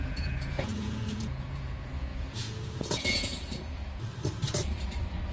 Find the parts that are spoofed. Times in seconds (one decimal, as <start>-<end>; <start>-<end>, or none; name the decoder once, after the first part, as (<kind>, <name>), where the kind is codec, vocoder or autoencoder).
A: 0.0-3.8 (vocoder, Vocos)